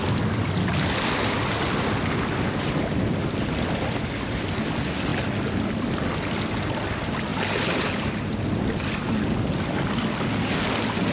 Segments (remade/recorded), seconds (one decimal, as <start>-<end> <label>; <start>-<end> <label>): 0.0-11.1 recorded